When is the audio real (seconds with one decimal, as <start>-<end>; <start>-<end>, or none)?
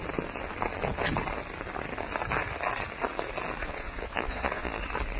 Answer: 0.0-3.6; 4.8-5.2